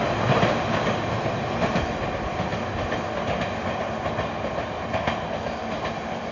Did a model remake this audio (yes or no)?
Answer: no